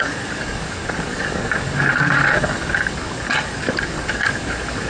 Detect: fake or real fake